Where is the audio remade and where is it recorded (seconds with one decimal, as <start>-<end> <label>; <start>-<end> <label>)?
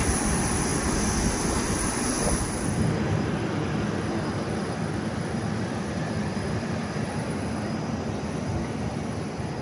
0.0-0.7 remade; 0.7-5.6 recorded; 5.6-9.6 remade